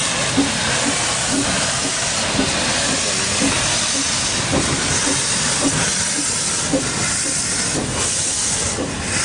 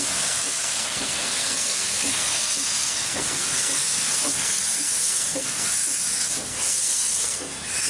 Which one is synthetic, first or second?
second